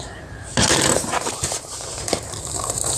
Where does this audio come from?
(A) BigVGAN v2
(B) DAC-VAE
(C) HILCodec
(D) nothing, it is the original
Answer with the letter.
A